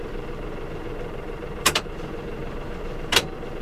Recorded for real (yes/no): no